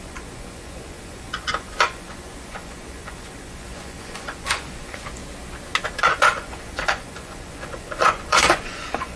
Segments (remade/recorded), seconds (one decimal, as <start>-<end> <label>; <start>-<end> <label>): 0.0-5.2 remade; 5.2-6.0 recorded; 6.0-9.2 remade